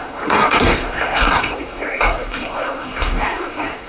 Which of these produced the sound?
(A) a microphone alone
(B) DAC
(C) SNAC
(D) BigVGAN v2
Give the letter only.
C